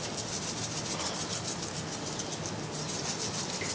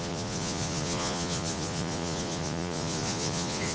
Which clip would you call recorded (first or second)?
first